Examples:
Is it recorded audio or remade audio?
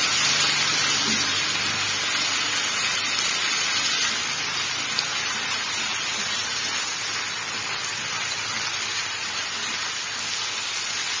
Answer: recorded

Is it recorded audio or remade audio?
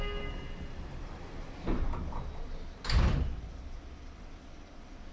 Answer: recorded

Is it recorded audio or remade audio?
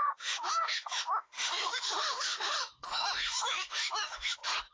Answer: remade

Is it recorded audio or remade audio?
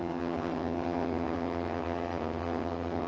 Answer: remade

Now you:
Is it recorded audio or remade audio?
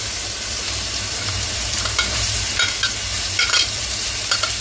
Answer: remade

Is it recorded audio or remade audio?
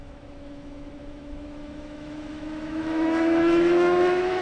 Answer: remade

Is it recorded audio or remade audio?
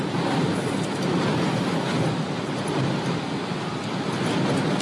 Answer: recorded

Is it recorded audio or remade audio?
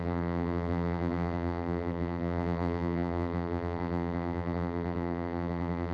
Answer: remade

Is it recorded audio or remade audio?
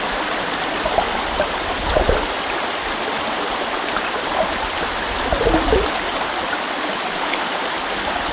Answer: recorded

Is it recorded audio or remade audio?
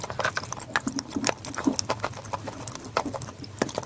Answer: recorded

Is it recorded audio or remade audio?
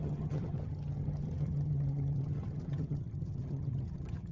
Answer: remade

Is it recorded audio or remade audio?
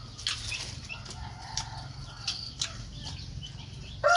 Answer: recorded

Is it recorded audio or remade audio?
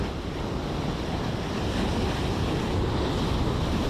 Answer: recorded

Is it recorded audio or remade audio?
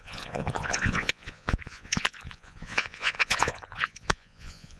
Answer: remade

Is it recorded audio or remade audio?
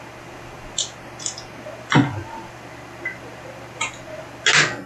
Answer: recorded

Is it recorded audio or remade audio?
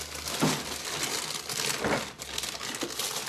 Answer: recorded